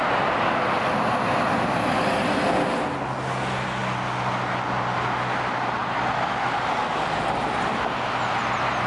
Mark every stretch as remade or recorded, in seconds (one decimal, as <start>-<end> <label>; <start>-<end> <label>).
0.0-8.9 recorded

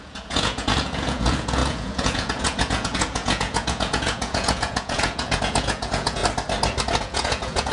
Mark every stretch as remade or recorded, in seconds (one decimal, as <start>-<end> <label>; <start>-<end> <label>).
0.0-6.2 remade; 6.2-7.0 recorded; 7.0-7.7 remade

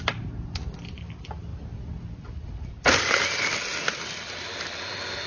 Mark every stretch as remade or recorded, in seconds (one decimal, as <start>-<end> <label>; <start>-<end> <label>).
0.0-1.5 remade; 1.5-2.5 recorded; 2.5-5.3 remade

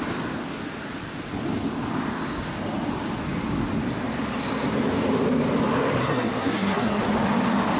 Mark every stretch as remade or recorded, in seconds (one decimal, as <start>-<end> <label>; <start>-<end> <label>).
0.0-6.0 recorded; 6.0-7.0 remade; 7.0-7.8 recorded